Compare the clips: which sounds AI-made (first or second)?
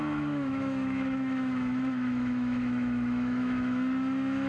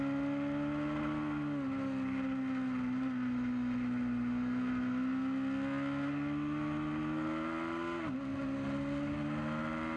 first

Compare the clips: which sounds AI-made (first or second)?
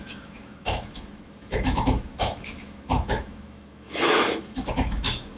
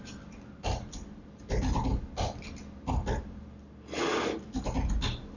first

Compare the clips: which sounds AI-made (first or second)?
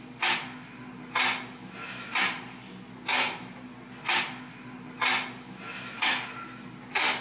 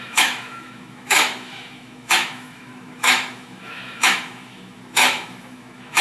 second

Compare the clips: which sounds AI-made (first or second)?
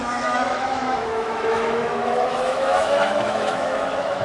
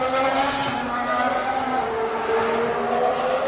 first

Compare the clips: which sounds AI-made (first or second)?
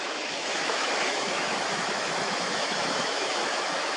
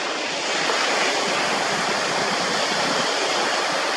first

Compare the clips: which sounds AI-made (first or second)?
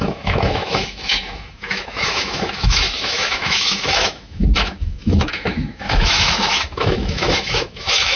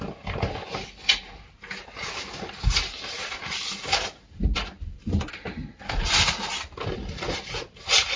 first